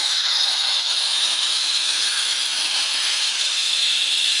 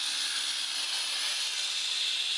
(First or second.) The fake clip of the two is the first